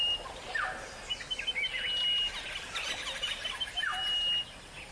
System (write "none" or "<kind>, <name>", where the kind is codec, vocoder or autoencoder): none